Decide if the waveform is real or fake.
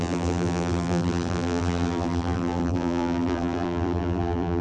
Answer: fake